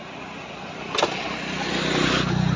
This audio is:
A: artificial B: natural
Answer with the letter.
B